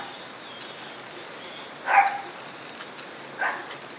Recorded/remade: recorded